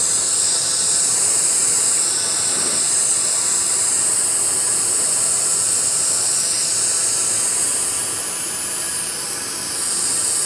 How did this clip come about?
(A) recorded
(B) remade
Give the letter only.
A